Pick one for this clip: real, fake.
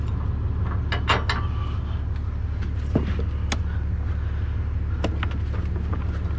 real